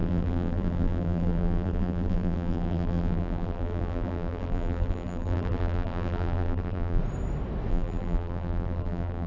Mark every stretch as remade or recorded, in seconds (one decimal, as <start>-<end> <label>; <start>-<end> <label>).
0.0-7.0 remade; 7.0-7.7 recorded; 7.7-9.3 remade